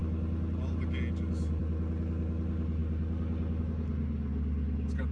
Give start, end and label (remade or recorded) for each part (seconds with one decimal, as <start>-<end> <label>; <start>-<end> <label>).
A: 0.0-5.1 recorded